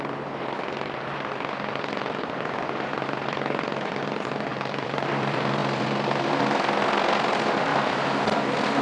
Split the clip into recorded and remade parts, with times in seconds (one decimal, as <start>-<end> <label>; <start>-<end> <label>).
0.0-4.5 recorded; 4.5-5.1 remade; 5.1-7.7 recorded; 7.7-8.2 remade; 8.2-8.8 recorded